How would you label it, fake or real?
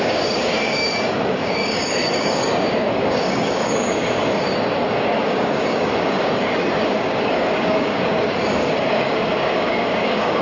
fake